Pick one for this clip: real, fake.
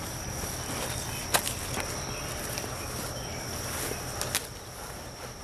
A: real